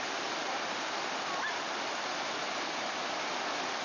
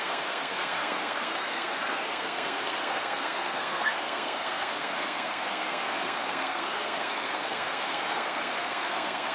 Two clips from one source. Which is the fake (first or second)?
second